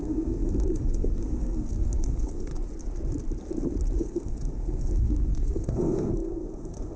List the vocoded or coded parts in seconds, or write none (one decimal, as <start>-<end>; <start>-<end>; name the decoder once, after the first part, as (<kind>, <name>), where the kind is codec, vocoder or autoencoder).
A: 0.0-2.5 (codec, SNAC); 4.0-7.0